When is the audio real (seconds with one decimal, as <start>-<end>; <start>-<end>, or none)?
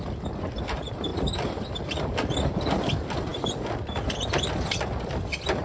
0.0-5.6